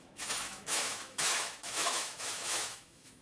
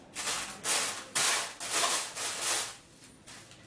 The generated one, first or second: first